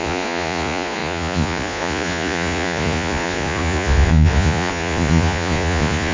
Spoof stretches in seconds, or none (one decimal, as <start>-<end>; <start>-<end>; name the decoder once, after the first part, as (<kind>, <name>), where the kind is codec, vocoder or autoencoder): 0.0-6.1 (vocoder, Vocos)